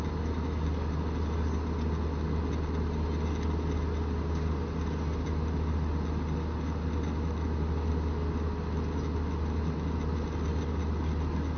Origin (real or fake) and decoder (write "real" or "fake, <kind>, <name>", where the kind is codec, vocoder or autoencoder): real